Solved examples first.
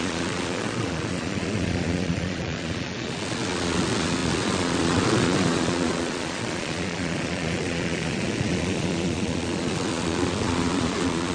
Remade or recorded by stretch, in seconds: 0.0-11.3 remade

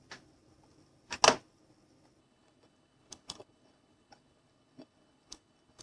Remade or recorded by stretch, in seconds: 0.0-2.2 recorded; 2.2-5.8 remade